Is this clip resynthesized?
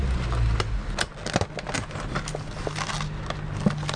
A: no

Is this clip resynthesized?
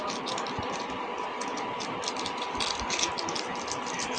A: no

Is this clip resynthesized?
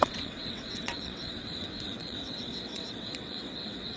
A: yes